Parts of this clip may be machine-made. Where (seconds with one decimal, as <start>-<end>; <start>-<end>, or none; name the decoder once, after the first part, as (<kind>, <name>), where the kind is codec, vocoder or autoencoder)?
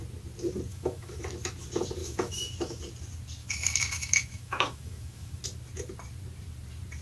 0.7-1.2 (autoencoder, DAC-VAE); 2.0-2.8; 3.4-5.4